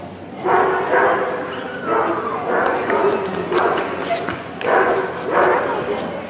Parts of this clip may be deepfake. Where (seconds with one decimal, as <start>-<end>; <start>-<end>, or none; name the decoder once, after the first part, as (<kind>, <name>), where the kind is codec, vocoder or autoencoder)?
2.3-5.1 (vocoder, Vocos)